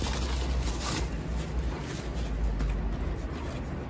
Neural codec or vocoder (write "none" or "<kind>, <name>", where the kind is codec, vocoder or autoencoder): none